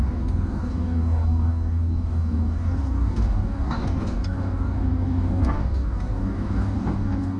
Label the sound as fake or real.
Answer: fake